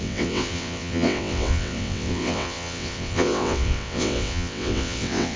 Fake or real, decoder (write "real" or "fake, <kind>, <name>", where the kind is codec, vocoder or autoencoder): fake, vocoder, WaveNeXt